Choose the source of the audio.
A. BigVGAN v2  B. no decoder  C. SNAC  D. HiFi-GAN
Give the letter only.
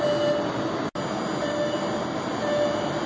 B